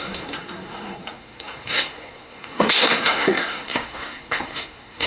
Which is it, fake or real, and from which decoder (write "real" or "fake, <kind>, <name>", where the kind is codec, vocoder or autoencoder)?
fake, codec, SNAC